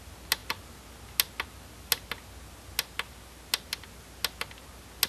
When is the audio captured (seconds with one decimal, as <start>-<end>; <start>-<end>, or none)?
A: 0.0-5.1

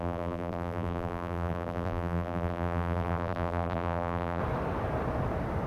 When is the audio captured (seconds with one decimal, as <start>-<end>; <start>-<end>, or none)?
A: 4.4-5.7